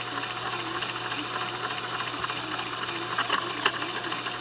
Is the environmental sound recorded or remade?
recorded